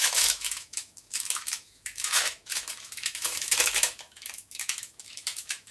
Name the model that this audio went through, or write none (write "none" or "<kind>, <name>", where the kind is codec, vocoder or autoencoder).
autoencoder, DAC-VAE